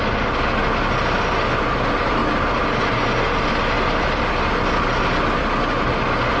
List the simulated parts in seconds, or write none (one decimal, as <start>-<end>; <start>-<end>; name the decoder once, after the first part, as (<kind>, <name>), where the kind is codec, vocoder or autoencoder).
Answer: none